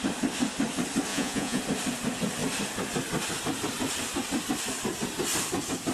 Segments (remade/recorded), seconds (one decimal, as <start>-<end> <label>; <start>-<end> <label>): 0.0-1.1 recorded; 1.1-1.6 remade; 1.6-5.9 recorded